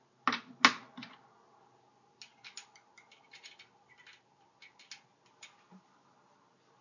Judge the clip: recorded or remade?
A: recorded